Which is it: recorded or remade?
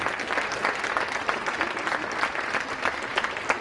recorded